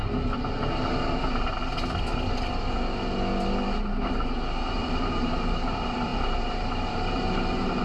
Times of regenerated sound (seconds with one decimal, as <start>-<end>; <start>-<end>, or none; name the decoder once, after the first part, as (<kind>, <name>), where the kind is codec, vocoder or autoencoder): 4.7-7.8 (vocoder, BigVGAN v2)